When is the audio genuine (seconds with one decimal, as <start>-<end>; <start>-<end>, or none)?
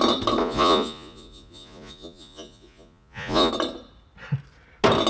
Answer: 0.0-0.4; 3.5-5.1